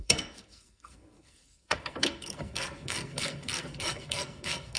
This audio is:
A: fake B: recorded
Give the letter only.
A